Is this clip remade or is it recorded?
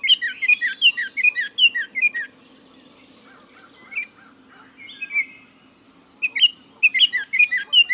recorded